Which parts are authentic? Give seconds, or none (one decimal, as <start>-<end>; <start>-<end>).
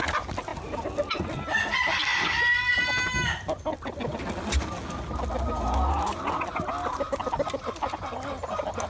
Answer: 0.0-8.9